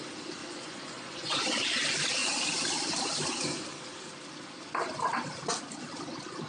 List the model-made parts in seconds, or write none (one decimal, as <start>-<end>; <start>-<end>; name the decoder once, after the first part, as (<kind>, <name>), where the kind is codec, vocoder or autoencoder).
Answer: 0.4-1.4 (vocoder, Vocos)